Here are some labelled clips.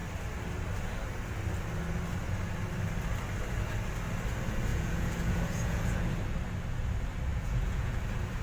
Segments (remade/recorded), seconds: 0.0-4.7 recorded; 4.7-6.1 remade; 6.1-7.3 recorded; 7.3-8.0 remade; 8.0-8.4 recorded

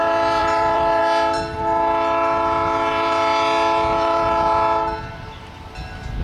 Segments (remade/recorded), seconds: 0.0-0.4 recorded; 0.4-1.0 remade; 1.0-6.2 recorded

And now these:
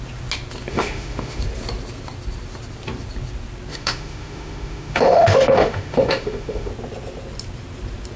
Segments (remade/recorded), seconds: 0.0-0.7 recorded; 0.7-1.4 remade; 1.4-3.7 recorded; 3.7-6.7 remade; 6.7-8.2 recorded

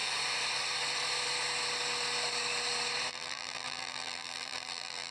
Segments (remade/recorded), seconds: 0.0-3.1 recorded; 3.1-5.1 remade